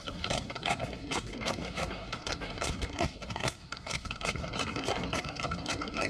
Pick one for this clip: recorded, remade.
remade